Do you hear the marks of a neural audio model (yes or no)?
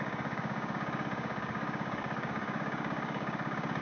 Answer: yes